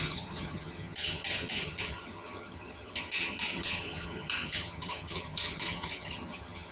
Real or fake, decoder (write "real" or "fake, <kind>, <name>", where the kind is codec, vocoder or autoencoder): fake, vocoder, HiFi-GAN